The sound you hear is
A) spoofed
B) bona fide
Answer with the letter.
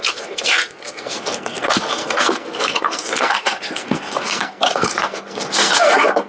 A